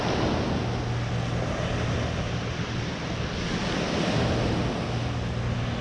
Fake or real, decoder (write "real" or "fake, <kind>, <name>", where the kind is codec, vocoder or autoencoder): real